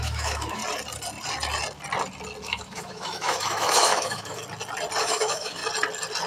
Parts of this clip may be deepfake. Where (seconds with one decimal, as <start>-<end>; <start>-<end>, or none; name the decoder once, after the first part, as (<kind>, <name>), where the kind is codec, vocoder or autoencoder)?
0.0-0.6 (autoencoder, DAC-VAE); 2.4-4.4; 5.0-5.6